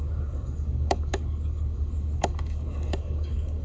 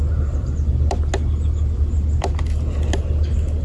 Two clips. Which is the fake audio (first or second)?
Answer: first